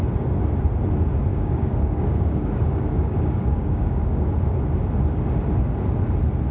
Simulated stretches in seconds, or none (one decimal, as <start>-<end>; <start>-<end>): 1.3-4.3